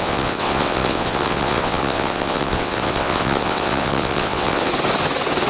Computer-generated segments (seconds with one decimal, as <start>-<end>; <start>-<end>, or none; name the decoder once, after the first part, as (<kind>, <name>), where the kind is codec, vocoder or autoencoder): 0.0-4.7 (vocoder, WaveNeXt)